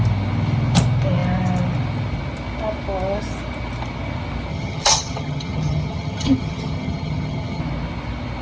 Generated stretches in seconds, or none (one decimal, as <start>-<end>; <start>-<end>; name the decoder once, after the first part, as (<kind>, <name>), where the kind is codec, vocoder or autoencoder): 4.5-7.6 (vocoder, HiFi-GAN)